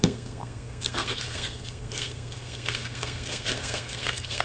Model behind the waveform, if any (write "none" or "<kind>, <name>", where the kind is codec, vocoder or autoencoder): codec, SNAC